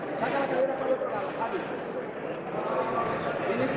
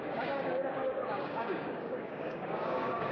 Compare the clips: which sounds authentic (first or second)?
first